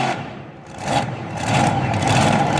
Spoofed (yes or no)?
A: yes